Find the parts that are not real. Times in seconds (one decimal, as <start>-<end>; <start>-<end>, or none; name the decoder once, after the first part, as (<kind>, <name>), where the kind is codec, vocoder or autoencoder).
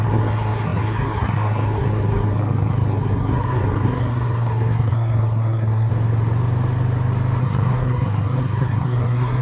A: 0.0-5.9 (codec, SNAC); 7.4-9.4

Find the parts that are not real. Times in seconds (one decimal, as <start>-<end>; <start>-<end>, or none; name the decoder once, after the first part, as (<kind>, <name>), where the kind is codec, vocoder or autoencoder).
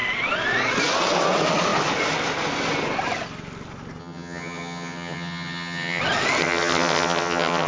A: 4.0-6.0 (vocoder, HiFi-GAN); 6.4-7.7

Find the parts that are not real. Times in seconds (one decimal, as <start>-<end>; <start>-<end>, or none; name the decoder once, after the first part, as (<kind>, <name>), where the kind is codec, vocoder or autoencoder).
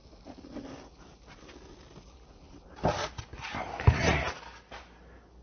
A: none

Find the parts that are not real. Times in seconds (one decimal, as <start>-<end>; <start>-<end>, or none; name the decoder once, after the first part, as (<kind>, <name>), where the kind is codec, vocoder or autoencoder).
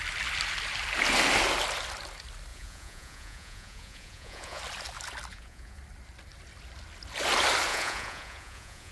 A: 2.5-4.6 (vocoder, Vocos); 5.3-5.8; 7.7-8.9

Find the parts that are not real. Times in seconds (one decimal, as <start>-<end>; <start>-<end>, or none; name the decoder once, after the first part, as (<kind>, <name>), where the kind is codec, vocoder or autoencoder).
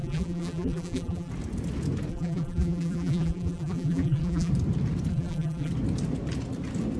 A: 0.0-1.3 (vocoder, BigVGAN v2); 2.1-4.5; 5.1-5.7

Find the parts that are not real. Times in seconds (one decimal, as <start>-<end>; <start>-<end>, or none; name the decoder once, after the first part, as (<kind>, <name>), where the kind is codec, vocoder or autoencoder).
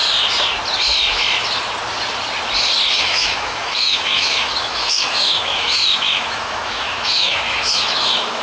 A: 3.0-8.4 (autoencoder, DAC-VAE)